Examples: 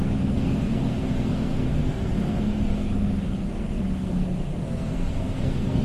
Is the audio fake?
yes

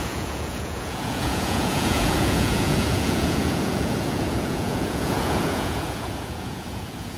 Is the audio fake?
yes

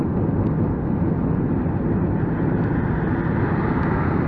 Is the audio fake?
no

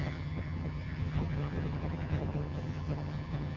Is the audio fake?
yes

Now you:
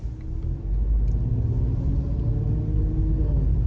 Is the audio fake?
no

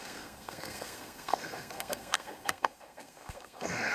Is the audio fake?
yes